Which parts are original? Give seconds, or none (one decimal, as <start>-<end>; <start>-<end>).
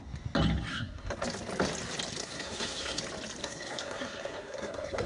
0.0-0.7; 1.2-2.2; 3.0-3.4